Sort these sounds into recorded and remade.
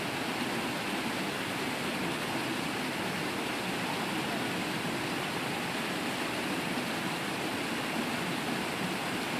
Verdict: recorded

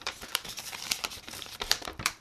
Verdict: remade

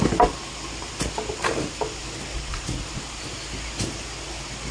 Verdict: recorded